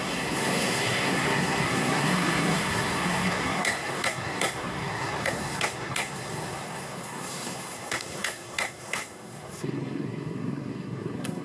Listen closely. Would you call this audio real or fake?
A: fake